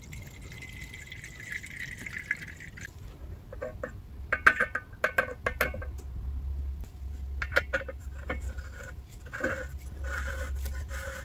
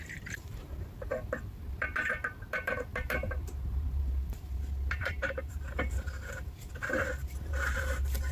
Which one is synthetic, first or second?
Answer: second